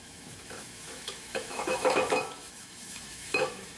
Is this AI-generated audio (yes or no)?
yes